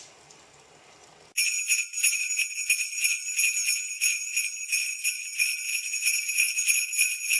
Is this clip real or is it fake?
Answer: real